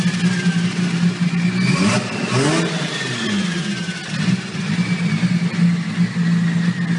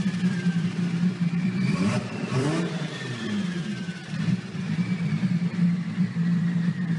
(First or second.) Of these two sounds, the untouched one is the first